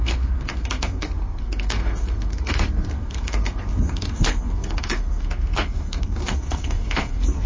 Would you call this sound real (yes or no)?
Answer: no